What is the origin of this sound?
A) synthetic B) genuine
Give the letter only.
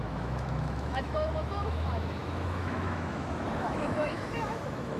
A